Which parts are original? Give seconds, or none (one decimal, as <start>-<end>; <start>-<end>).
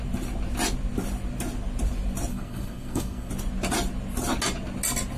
0.0-2.3; 3.3-5.2